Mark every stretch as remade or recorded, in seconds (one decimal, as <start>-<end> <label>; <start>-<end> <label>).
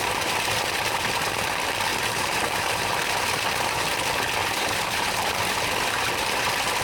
0.0-1.9 recorded; 1.9-2.9 remade; 2.9-4.4 recorded; 4.4-5.3 remade; 5.3-6.8 recorded